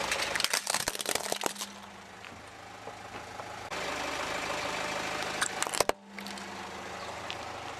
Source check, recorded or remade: recorded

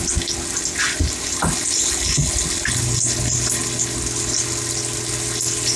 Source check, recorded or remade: recorded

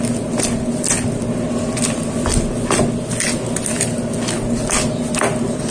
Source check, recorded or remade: recorded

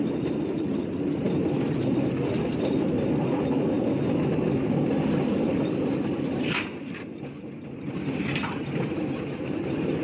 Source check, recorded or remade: recorded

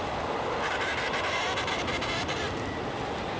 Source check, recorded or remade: remade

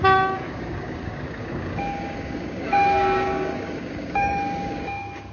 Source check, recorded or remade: remade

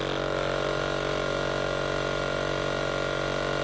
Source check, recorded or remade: remade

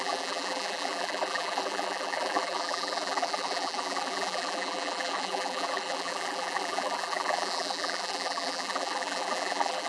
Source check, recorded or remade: remade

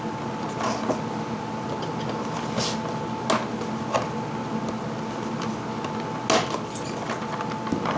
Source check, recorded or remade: recorded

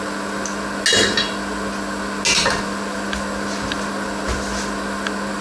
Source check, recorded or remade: recorded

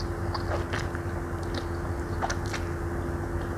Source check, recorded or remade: recorded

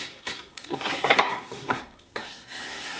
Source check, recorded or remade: remade